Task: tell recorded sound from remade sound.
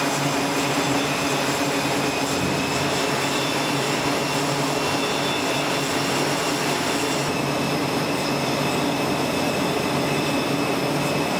recorded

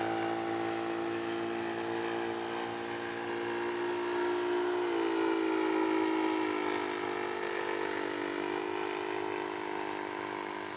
recorded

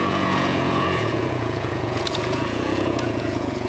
remade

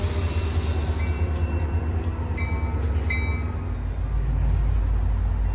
recorded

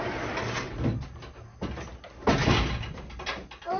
recorded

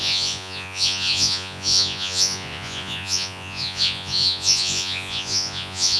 remade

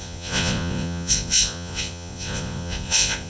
remade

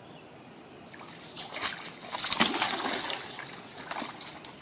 recorded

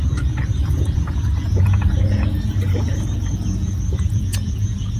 remade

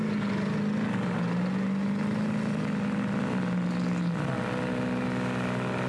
recorded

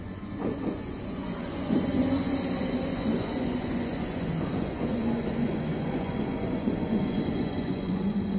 remade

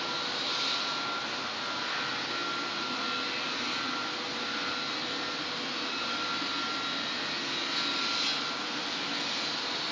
recorded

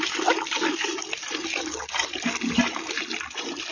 recorded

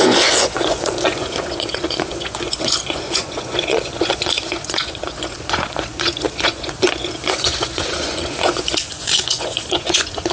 remade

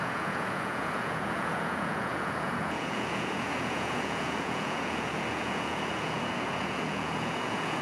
remade